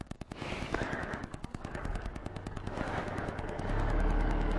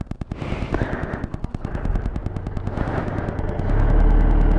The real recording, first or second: second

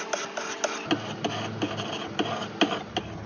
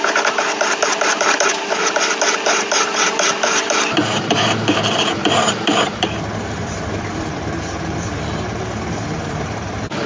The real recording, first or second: first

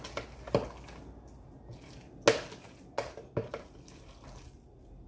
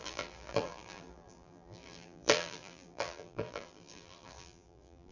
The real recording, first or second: first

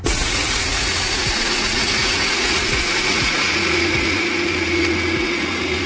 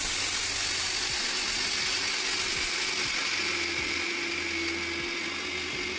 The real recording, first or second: second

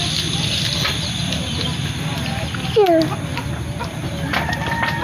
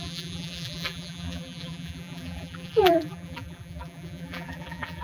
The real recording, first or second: first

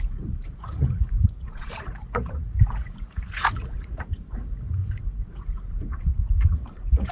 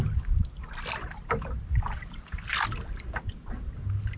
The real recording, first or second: second